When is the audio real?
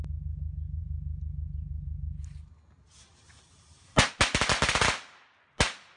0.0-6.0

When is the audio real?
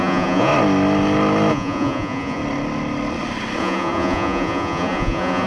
0.5-1.5; 2.4-3.6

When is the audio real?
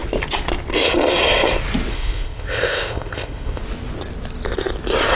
0.0-1.9; 3.6-5.2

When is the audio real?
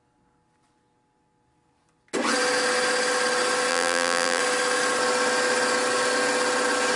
0.0-3.7; 4.4-7.0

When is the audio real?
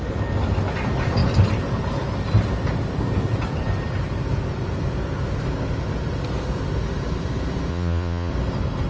0.0-7.7; 8.3-8.9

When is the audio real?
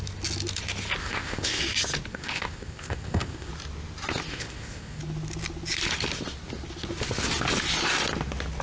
0.0-1.0; 1.6-2.1; 3.5-4.3; 5.0-8.6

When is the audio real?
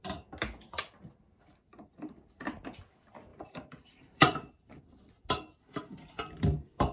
0.0-3.3; 4.8-6.9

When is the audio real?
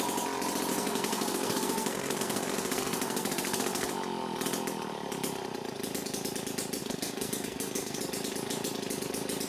0.0-0.7; 3.9-6.8; 8.0-9.5